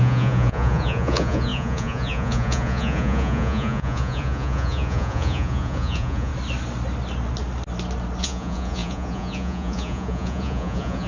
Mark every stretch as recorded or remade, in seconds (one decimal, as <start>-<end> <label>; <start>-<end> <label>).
0.0-6.3 remade; 6.3-8.2 recorded; 8.2-11.1 remade

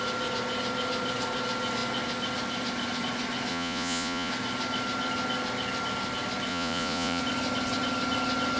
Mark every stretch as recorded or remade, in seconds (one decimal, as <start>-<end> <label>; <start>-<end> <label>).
0.0-3.5 recorded; 3.5-4.3 remade; 4.3-6.5 recorded; 6.5-7.2 remade; 7.2-8.6 recorded

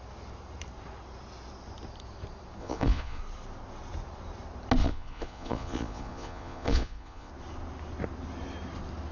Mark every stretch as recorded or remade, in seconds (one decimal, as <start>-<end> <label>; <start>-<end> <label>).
0.0-2.6 recorded; 2.6-3.2 remade; 3.2-4.8 recorded; 4.8-7.3 remade; 7.3-9.1 recorded

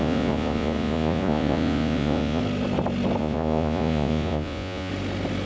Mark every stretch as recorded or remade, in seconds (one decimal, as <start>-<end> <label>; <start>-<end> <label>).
0.0-2.4 remade; 2.4-3.2 recorded; 3.2-4.9 remade; 4.9-5.5 recorded

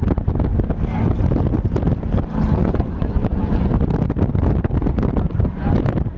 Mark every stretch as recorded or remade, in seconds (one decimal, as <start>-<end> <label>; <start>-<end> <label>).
0.0-2.6 recorded; 2.6-3.5 remade; 3.5-6.2 recorded

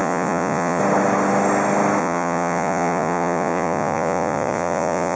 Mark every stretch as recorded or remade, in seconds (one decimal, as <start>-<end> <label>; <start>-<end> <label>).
0.0-0.8 remade; 0.8-2.0 recorded; 2.0-5.2 remade